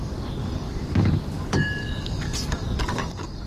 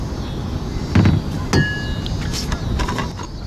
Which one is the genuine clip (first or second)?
second